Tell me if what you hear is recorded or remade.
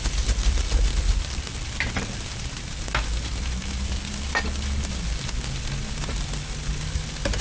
recorded